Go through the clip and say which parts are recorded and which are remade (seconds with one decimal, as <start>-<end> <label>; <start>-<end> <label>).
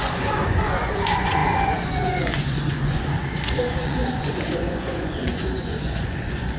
0.0-6.6 remade